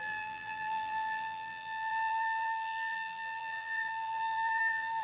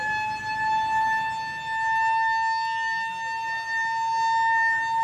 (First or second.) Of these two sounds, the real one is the second